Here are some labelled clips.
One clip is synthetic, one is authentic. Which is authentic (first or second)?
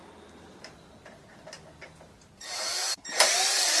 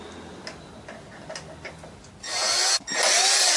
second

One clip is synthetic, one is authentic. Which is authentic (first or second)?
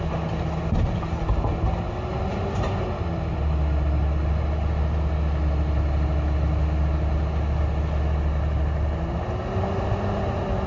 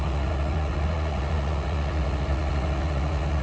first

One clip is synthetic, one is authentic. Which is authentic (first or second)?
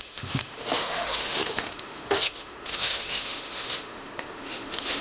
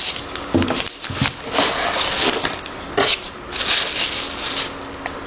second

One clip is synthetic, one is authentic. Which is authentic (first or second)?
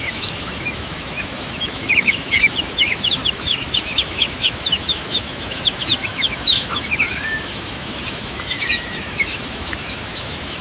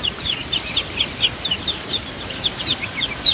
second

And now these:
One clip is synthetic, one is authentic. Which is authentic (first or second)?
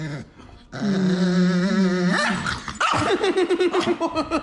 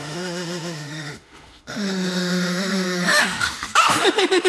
first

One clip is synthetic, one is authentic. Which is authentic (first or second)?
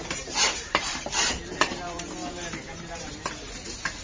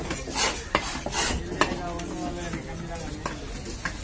second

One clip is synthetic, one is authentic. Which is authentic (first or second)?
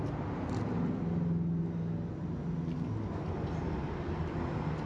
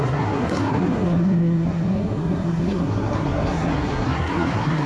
first